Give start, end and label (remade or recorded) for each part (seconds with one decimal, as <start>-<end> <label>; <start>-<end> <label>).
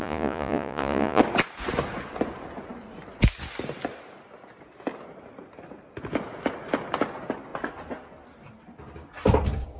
0.0-1.2 remade; 1.2-9.8 recorded